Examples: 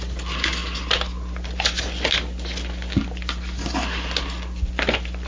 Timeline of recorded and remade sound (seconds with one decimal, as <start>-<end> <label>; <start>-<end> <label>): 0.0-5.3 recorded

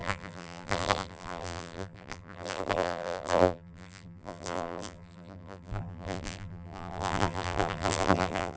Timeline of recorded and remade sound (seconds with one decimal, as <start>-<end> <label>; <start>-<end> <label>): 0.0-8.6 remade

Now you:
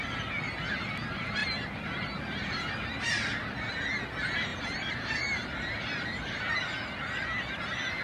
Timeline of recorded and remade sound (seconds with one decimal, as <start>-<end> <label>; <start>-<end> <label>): 0.0-4.5 recorded; 4.5-6.4 remade; 6.4-8.0 recorded

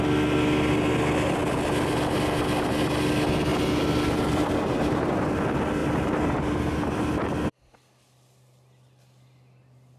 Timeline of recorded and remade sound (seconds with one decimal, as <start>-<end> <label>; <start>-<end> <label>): 0.0-3.5 recorded; 3.5-5.3 remade; 5.3-5.8 recorded; 5.8-7.1 remade; 7.1-10.0 recorded

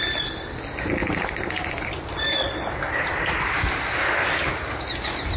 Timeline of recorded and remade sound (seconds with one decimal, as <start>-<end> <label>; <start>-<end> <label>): 0.0-1.0 recorded; 1.0-3.7 remade; 3.7-5.4 recorded

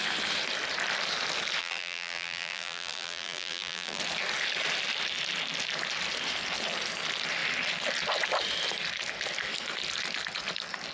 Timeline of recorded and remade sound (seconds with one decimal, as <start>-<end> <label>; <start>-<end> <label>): 0.0-1.6 recorded; 1.6-4.0 remade; 4.0-10.9 recorded